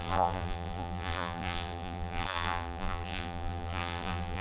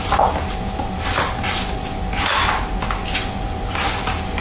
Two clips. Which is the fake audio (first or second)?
first